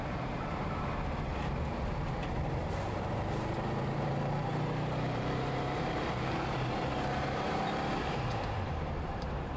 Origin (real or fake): fake